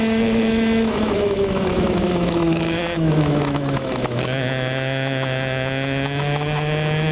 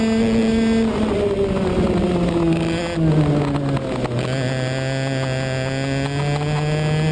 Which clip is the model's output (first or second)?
first